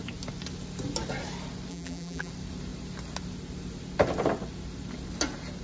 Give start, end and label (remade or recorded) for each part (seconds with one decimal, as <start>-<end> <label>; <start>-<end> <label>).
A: 0.0-1.7 recorded; 1.7-2.3 remade; 2.3-5.6 recorded